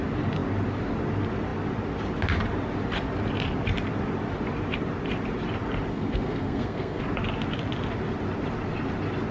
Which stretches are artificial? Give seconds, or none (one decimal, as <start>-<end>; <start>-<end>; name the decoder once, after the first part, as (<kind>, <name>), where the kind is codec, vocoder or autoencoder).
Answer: 5.9-7.0 (codec, SNAC)